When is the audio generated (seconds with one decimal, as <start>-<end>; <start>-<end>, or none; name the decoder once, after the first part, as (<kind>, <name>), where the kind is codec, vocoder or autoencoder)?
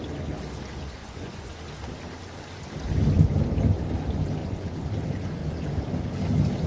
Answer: 1.0-1.6 (vocoder, Vocos); 4.4-4.9